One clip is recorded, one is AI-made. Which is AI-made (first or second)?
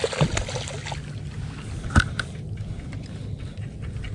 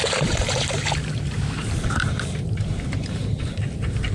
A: second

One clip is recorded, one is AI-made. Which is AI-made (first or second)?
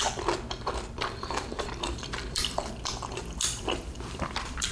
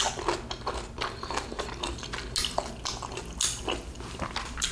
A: first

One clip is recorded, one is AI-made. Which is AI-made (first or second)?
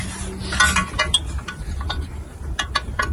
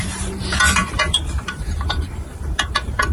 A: second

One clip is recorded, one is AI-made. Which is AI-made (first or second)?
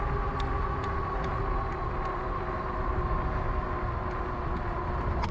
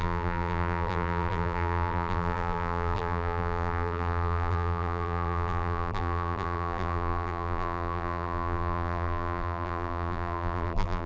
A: second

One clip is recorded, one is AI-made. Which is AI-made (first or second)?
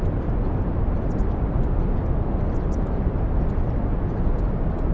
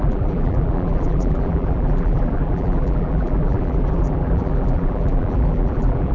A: second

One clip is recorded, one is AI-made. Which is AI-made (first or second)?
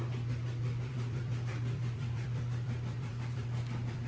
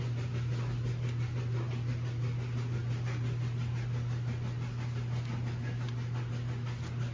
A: first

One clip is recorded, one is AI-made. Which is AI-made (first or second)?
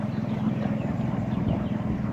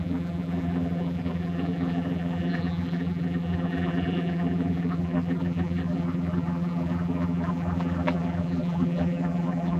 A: second